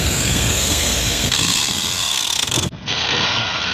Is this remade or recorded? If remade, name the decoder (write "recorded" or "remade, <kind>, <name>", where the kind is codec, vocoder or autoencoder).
remade, codec, SNAC